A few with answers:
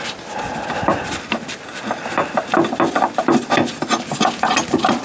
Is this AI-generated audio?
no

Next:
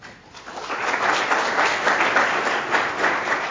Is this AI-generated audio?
no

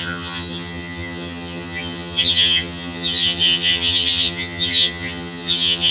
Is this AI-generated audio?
yes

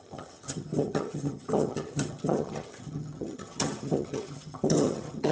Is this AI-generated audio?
yes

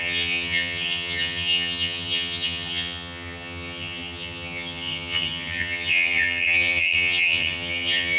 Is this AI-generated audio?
yes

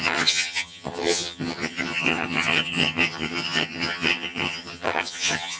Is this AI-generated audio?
yes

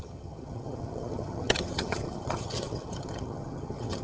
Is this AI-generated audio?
yes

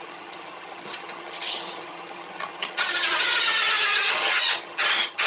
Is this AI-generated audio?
yes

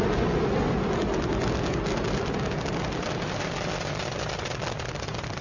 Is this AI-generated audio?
no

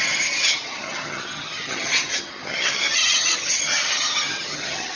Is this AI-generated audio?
yes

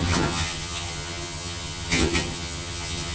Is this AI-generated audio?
yes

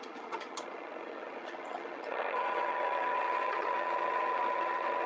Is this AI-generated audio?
yes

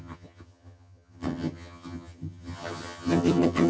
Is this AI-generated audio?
yes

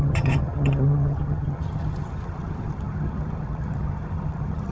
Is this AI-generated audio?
yes